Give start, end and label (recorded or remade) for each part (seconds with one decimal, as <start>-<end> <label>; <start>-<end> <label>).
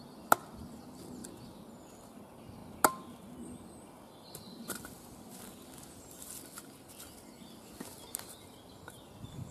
0.0-9.5 recorded